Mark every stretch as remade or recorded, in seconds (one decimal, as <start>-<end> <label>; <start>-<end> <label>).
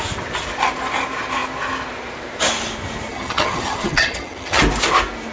0.0-3.1 recorded; 3.1-4.6 remade; 4.6-5.3 recorded